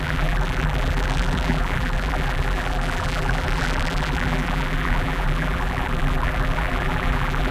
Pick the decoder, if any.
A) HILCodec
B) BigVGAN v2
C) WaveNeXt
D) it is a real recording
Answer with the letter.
B